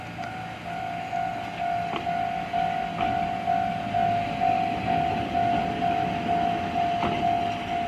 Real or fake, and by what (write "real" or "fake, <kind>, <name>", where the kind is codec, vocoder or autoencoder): real